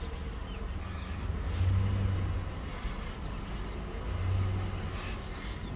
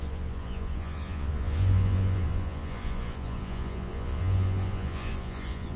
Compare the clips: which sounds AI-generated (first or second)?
second